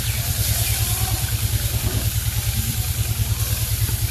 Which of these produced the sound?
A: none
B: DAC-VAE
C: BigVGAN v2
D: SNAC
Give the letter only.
C